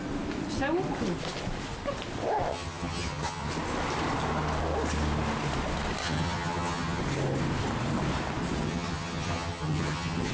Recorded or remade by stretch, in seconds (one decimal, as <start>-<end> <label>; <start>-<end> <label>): 0.0-2.5 recorded; 2.5-3.5 remade; 3.5-6.0 recorded; 6.0-7.0 remade; 7.0-8.6 recorded; 8.6-10.3 remade